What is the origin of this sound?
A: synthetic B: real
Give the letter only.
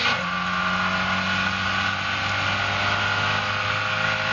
B